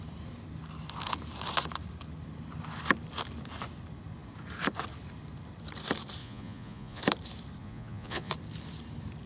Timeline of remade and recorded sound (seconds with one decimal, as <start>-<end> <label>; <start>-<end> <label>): 0.0-6.2 recorded; 6.2-7.0 remade; 7.0-7.6 recorded; 7.6-8.3 remade; 8.3-9.3 recorded